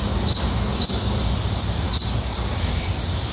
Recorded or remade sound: recorded